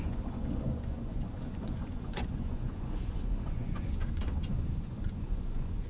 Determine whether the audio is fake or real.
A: fake